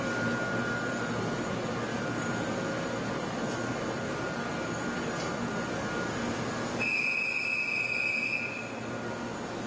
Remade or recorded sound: recorded